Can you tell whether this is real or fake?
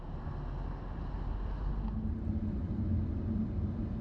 real